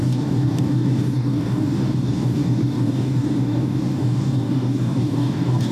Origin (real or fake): fake